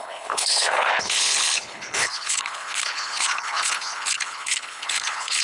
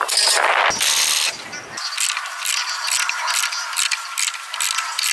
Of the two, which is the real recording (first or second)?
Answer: second